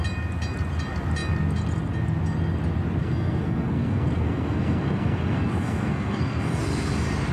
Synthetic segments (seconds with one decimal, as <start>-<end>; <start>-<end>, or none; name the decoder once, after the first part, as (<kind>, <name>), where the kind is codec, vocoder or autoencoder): 3.0-6.6 (codec, SNAC)